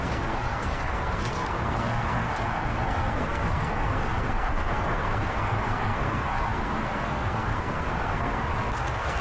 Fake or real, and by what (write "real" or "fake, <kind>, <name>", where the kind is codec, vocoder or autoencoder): fake, codec, SNAC